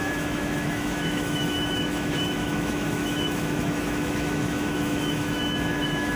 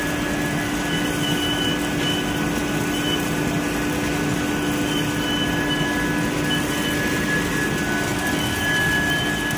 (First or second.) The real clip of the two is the second